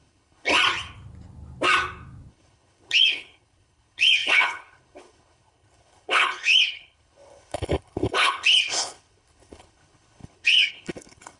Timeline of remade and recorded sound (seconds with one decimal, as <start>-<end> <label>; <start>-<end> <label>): 0.0-0.5 remade; 0.5-2.3 recorded; 2.3-11.4 remade